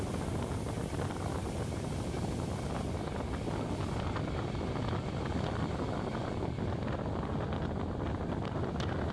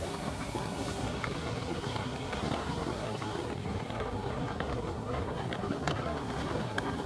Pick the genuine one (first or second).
first